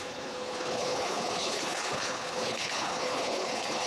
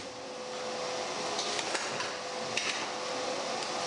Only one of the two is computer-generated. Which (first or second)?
first